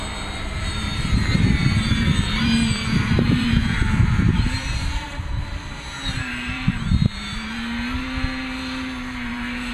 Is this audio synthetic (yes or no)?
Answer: yes